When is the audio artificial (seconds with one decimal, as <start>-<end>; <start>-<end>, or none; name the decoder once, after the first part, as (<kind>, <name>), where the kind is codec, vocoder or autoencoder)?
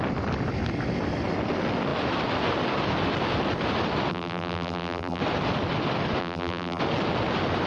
4.1-5.2 (vocoder, BigVGAN v2); 6.2-6.8